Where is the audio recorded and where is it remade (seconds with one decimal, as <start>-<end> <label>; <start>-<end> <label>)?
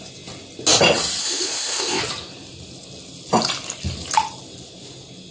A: 0.0-1.2 recorded; 1.2-2.0 remade; 2.0-5.3 recorded